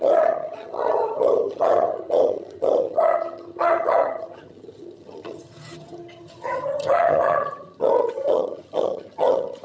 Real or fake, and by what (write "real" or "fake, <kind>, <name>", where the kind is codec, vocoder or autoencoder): fake, vocoder, HiFi-GAN